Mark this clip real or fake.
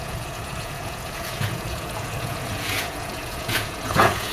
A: fake